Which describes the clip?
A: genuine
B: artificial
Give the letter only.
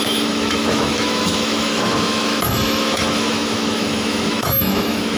B